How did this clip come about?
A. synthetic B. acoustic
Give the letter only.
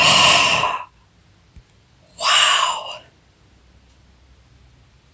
B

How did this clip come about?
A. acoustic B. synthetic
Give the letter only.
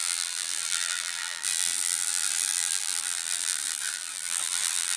B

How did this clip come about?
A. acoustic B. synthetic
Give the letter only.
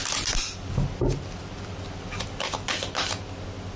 A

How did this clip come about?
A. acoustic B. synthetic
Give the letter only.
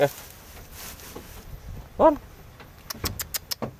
A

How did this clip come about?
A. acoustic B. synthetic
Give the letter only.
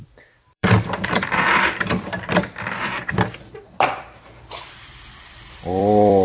B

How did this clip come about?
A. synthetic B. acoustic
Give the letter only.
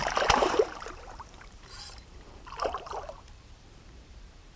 A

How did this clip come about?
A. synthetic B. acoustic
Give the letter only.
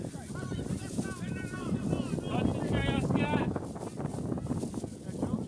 B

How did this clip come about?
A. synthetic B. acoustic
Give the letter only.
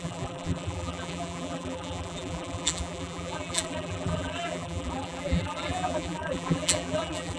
A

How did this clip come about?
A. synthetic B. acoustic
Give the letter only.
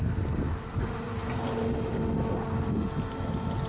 B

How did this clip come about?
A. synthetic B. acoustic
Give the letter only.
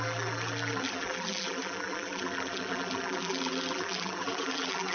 A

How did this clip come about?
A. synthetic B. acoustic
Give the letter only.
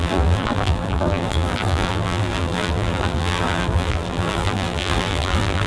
A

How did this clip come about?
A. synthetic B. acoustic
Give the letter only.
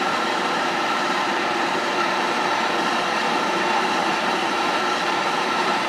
A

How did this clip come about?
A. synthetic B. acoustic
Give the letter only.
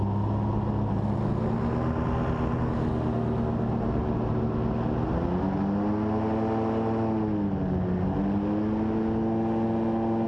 B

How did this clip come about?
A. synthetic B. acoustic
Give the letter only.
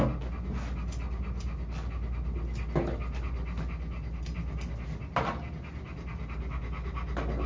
B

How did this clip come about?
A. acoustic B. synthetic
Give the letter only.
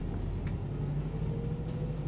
A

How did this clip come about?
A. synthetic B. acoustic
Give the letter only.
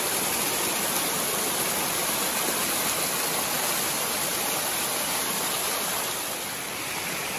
B